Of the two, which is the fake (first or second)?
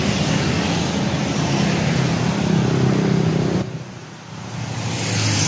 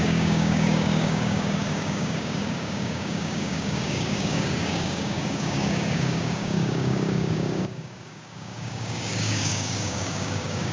second